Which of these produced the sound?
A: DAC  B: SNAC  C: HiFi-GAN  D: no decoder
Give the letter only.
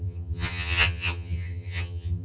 C